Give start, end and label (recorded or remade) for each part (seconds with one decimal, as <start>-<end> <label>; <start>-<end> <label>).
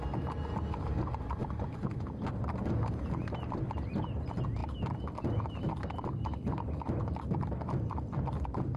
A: 0.0-1.4 recorded; 1.4-2.0 remade; 2.0-3.2 recorded; 3.2-4.0 remade; 4.0-8.8 recorded